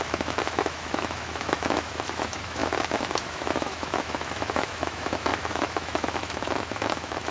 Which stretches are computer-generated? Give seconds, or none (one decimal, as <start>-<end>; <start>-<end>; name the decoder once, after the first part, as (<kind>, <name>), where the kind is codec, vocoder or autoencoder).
0.0-7.3 (autoencoder, DAC-VAE)